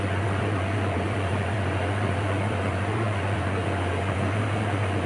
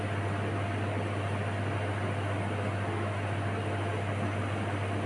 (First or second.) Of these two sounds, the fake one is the first